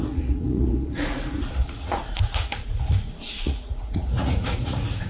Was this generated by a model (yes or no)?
yes